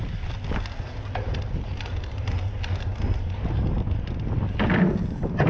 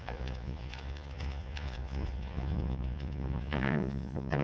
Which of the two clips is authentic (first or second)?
first